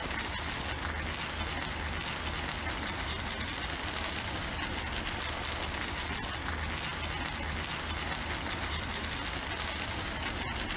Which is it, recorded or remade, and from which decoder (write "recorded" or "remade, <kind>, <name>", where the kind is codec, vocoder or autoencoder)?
recorded